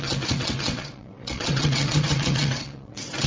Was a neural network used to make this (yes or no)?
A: yes